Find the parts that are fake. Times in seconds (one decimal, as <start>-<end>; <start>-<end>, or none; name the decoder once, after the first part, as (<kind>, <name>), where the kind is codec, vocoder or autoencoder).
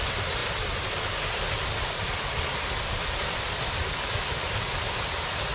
none